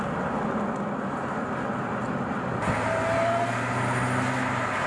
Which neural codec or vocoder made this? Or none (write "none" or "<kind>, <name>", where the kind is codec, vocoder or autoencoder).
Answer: none